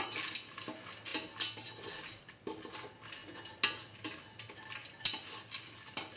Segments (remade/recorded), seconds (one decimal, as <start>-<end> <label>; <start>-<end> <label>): 0.0-6.2 recorded